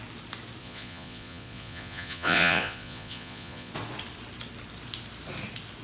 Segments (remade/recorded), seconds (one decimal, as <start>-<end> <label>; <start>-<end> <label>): 0.0-0.6 recorded; 0.6-3.7 remade; 3.7-5.8 recorded